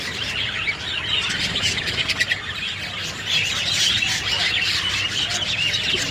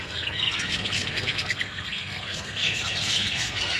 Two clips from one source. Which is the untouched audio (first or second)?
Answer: first